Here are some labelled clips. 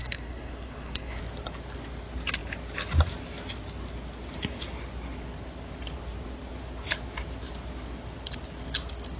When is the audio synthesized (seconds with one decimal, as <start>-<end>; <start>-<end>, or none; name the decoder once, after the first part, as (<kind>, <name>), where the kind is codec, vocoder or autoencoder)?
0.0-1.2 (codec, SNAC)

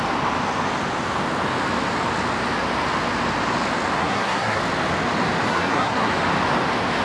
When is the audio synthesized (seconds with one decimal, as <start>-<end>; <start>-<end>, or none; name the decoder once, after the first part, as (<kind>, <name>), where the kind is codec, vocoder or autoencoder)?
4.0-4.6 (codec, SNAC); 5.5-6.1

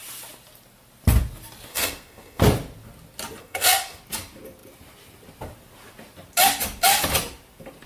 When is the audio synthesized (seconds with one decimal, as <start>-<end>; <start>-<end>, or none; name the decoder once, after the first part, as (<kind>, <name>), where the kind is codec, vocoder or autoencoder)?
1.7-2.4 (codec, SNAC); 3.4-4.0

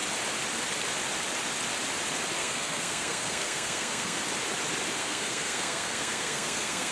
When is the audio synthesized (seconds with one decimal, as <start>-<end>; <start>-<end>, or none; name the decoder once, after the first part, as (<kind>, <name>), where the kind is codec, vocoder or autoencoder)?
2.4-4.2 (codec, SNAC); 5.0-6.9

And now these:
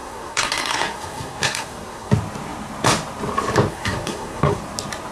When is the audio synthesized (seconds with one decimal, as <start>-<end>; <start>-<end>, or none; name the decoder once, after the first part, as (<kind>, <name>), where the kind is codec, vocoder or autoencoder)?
0.0-2.1 (codec, SNAC); 3.7-4.6